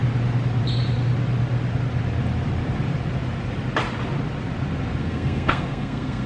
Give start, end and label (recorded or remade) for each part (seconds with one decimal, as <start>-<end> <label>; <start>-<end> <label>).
0.0-5.0 recorded; 5.0-6.3 remade